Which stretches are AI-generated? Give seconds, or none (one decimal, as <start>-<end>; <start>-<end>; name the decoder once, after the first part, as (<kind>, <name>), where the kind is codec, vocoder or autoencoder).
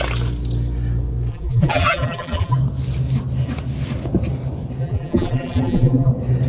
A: 1.3-2.6 (vocoder, BigVGAN v2); 4.8-6.1